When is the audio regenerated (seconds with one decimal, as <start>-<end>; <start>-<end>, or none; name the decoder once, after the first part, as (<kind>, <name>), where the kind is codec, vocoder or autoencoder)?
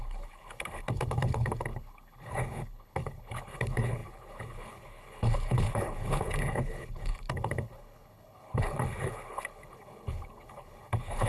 0.0-11.3 (codec, HILCodec)